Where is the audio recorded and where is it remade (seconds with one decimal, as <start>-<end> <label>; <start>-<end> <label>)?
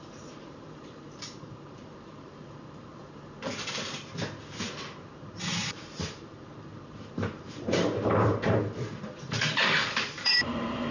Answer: 0.0-3.0 remade; 3.0-5.5 recorded; 5.5-10.9 remade